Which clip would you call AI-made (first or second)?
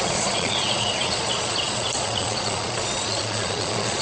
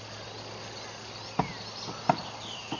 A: first